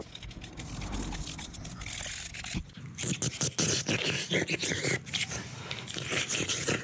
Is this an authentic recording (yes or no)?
yes